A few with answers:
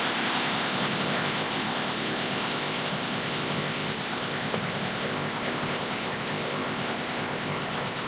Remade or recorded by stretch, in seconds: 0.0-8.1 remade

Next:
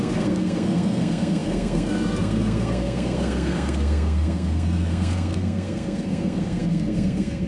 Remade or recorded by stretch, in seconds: 0.0-7.5 remade